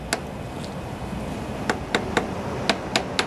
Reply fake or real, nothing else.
real